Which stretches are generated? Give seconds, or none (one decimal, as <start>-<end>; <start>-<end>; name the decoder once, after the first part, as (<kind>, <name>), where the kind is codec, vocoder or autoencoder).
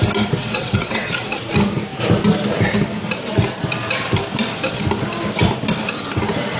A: 0.4-1.1 (vocoder, WaveNeXt)